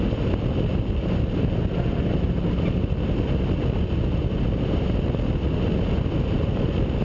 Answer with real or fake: real